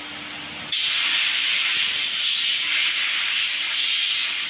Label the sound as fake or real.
real